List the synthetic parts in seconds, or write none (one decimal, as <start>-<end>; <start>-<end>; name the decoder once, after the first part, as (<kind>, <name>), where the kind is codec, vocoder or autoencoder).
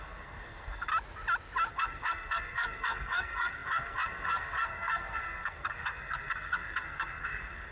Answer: 0.0-0.9 (codec, SNAC); 1.7-7.7